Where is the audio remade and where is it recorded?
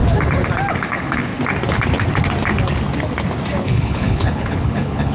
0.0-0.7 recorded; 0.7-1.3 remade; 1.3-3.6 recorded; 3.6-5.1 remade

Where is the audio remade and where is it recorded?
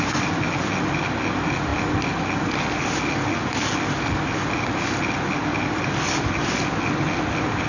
0.0-7.7 recorded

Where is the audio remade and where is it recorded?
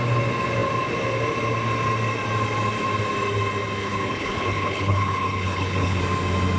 0.0-3.8 recorded; 3.8-6.0 remade; 6.0-6.6 recorded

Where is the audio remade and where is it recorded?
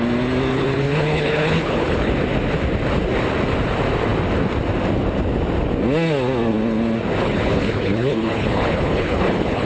0.0-0.5 recorded; 0.5-2.1 remade; 2.1-7.2 recorded; 7.2-9.7 remade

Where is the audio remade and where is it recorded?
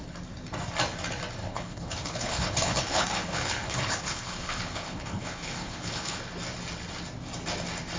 0.0-1.4 recorded; 1.4-6.2 remade; 6.2-8.0 recorded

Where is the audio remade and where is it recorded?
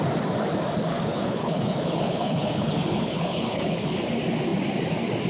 0.0-0.9 recorded; 0.9-4.0 remade; 4.0-5.3 recorded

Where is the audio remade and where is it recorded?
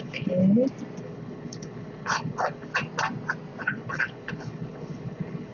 0.0-0.4 remade; 0.4-1.0 recorded; 1.0-2.7 remade; 2.7-3.6 recorded; 3.6-5.5 remade